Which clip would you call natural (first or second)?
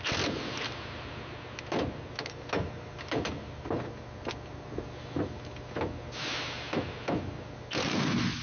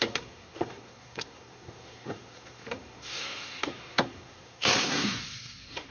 first